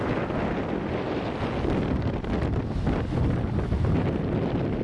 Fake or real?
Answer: real